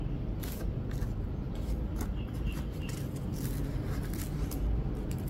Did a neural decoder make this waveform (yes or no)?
no